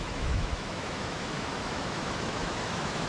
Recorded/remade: remade